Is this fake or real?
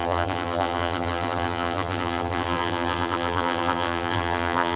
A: fake